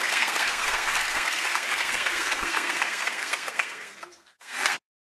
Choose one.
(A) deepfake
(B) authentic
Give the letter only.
A